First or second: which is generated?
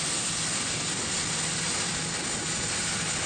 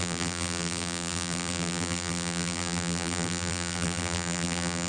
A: second